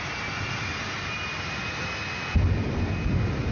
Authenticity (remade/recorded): recorded